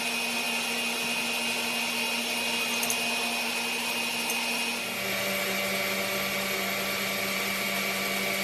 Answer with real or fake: real